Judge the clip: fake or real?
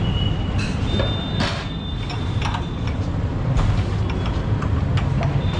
real